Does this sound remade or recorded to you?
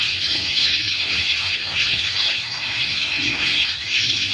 remade